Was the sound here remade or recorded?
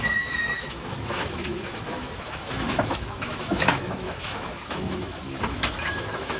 remade